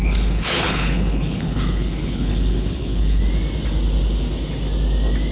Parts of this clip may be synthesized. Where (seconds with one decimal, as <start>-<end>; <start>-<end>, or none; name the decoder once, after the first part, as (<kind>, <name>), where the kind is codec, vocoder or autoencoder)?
0.0-3.2 (codec, HILCodec)